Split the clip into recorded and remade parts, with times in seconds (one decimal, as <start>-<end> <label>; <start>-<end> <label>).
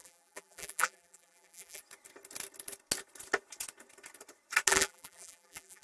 0.0-1.8 remade; 1.8-4.7 recorded; 4.7-5.8 remade